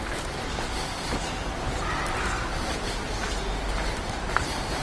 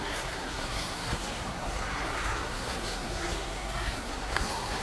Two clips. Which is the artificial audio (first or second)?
second